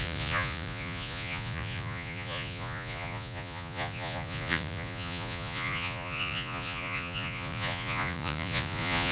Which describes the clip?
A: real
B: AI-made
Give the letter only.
B